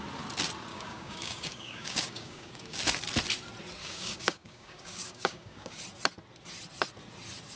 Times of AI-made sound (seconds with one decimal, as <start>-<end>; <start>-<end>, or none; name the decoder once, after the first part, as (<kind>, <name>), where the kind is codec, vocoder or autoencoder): 0.7-2.8 (codec, DAC); 3.8-5.8